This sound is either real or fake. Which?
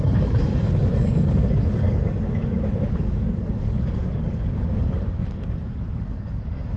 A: fake